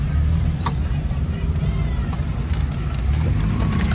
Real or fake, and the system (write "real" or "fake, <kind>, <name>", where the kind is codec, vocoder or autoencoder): real